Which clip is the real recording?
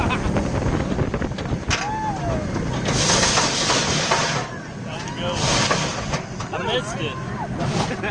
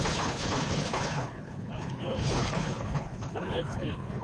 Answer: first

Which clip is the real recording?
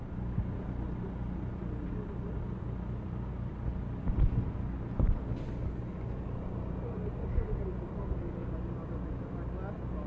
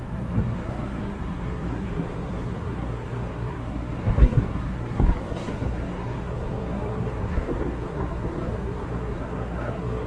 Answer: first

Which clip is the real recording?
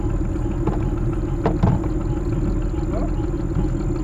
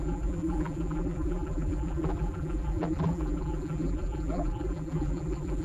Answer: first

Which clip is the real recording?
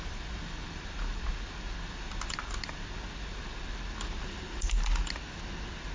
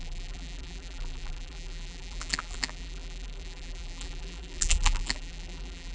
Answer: first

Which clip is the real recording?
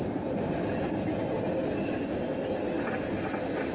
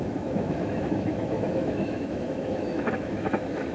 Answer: first